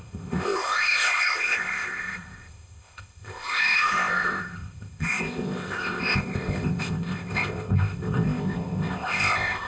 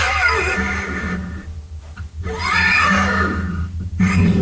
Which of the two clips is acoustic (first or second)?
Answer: second